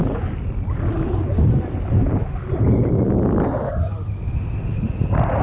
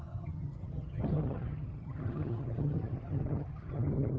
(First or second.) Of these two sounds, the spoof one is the second